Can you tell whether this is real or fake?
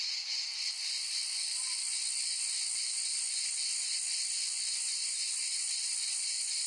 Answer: real